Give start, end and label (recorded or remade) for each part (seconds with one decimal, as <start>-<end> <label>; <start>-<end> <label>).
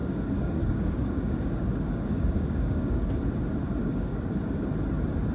0.0-3.2 remade; 3.2-3.8 recorded; 3.8-4.3 remade; 4.3-5.3 recorded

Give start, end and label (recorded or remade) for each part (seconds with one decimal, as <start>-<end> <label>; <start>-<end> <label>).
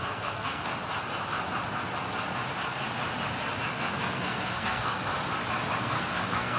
0.0-0.7 remade; 0.7-3.7 recorded; 3.7-5.1 remade; 5.1-5.8 recorded; 5.8-6.6 remade